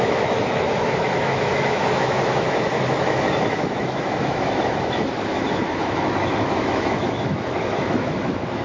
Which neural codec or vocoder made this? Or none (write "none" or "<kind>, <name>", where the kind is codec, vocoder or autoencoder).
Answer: autoencoder, DAC-VAE